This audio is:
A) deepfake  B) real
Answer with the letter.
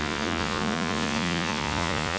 A